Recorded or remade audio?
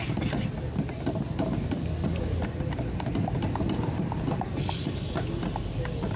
recorded